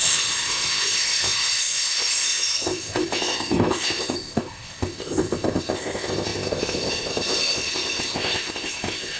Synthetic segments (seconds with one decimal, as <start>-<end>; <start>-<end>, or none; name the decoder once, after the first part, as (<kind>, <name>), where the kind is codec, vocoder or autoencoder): 0.0-9.2 (codec, ZipCodec)